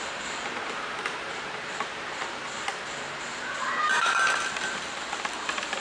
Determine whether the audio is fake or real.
fake